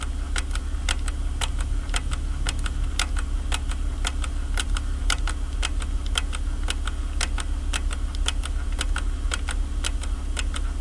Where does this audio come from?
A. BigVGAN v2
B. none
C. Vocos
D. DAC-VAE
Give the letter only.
B